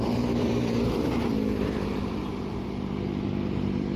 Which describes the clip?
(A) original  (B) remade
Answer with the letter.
B